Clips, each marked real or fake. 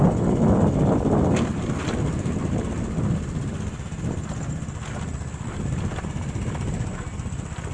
real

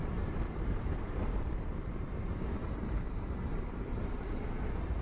fake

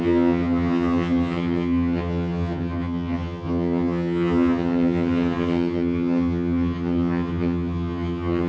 fake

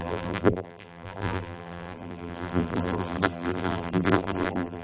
fake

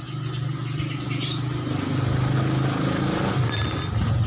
real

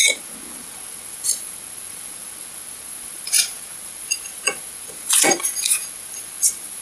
fake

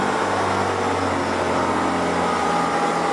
real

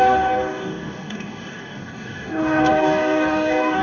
fake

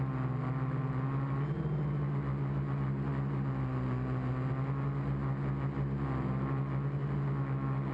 real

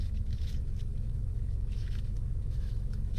fake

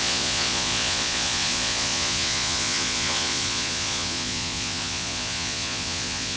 fake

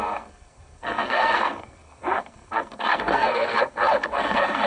fake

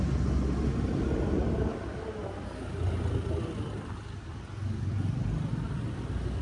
real